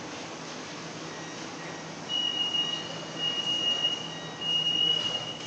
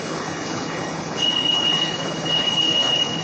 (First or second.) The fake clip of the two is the second